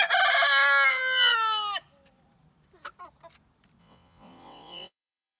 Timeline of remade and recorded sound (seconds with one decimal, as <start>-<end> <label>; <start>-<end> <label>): 0.0-0.9 recorded; 0.9-1.3 remade; 1.3-3.8 recorded; 3.8-5.4 remade